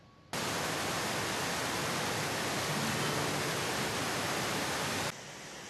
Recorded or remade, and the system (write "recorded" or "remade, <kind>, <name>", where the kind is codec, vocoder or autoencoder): recorded